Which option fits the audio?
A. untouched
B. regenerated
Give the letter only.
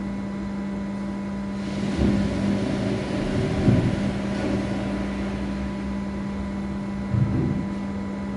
A